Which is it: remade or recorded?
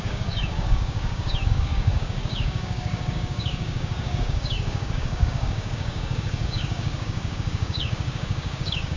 remade